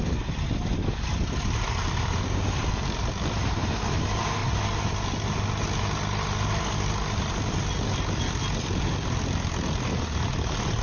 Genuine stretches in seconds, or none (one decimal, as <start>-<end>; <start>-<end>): 0.0-10.8